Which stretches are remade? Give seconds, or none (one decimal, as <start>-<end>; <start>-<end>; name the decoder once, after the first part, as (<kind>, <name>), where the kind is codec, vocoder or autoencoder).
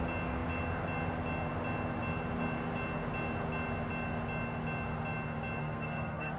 5.6-6.4 (codec, SNAC)